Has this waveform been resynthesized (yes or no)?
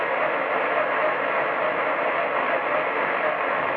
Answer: no